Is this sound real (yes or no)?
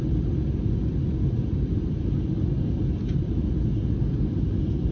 yes